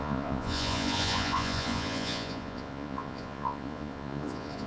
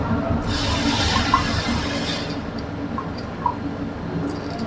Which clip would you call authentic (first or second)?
second